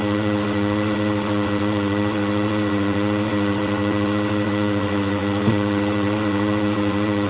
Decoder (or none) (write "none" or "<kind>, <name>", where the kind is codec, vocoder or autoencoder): vocoder, WaveNeXt